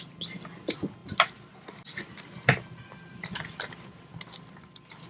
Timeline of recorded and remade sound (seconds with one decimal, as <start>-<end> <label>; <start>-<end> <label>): 0.0-1.0 recorded; 1.0-4.1 remade; 4.1-5.1 recorded